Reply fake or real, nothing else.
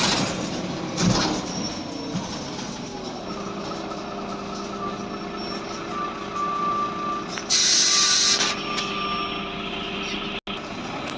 real